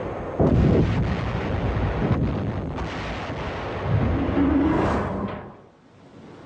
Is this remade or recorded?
recorded